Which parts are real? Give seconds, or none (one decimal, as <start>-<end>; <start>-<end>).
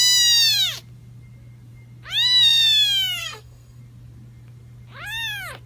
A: 0.0-3.2; 3.8-5.7